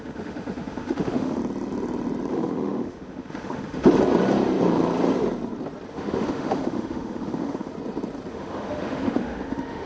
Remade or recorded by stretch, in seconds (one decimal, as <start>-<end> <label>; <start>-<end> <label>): 0.0-1.4 remade; 1.4-2.3 recorded; 2.3-3.9 remade; 3.9-5.9 recorded; 5.9-7.7 remade; 7.7-8.3 recorded; 8.3-9.9 remade